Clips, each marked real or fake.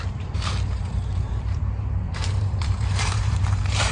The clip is fake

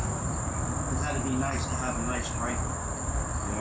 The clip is real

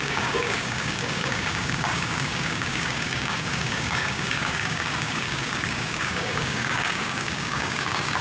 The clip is fake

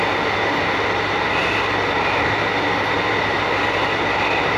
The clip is real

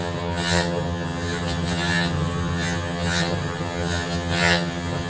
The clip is fake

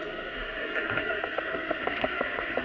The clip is fake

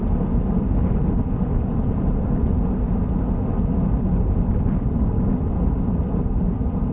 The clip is real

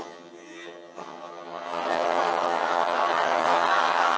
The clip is fake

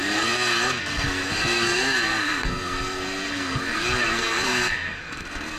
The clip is fake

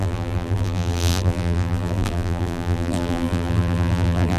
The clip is fake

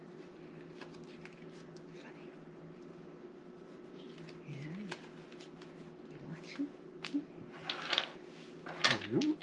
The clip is real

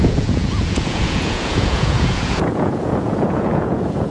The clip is fake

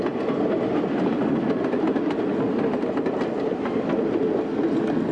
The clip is real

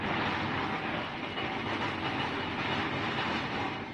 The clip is real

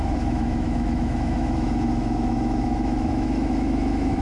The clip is fake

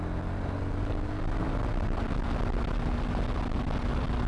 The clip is real